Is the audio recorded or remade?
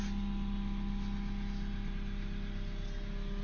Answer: recorded